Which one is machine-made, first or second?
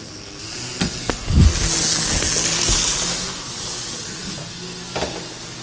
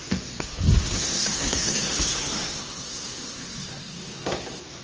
second